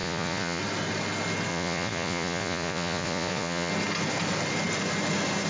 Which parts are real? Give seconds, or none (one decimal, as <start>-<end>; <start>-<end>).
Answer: 0.6-1.5; 3.7-5.5